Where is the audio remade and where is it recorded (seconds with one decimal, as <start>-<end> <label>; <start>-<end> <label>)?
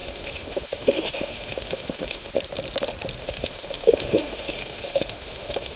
0.0-2.3 remade; 2.3-3.2 recorded; 3.2-5.8 remade